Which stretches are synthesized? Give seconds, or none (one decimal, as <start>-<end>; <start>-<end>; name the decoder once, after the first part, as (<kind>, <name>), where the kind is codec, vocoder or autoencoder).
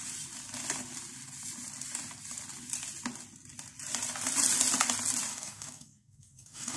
5.3-6.8 (codec, DAC)